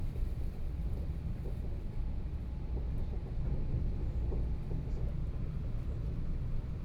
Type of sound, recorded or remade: recorded